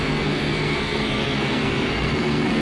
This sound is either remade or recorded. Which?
remade